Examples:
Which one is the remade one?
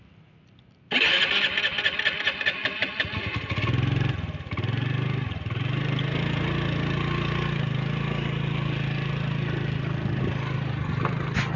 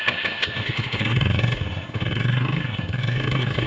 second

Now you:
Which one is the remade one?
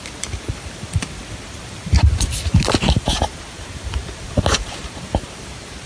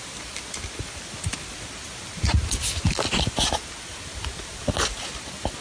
first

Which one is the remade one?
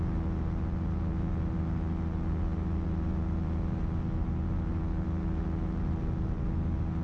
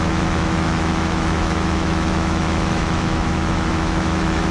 second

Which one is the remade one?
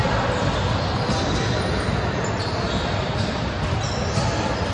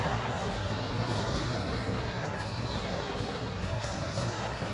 second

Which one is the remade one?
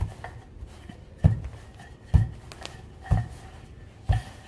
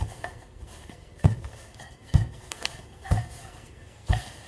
second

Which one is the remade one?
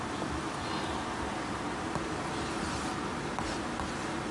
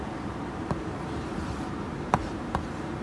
second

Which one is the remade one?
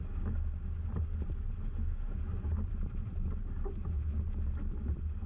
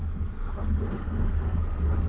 second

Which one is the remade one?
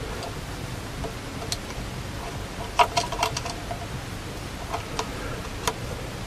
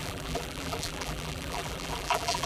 second